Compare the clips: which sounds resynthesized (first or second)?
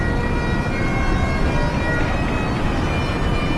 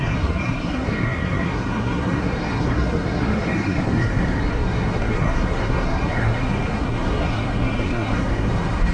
second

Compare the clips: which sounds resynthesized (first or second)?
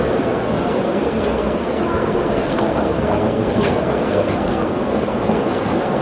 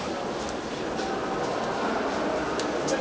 first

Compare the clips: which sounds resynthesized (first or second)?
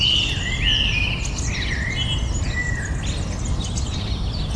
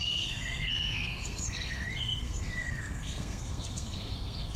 second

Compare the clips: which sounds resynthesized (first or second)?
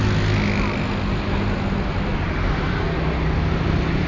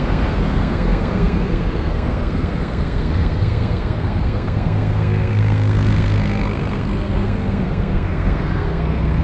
second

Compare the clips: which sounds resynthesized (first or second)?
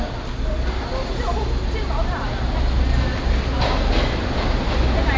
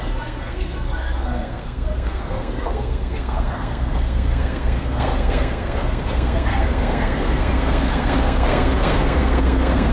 second